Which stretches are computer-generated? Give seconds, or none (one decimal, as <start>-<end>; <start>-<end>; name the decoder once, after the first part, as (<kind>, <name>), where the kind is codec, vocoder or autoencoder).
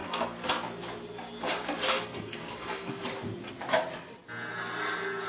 0.0-0.5 (codec, SNAC); 1.9-3.0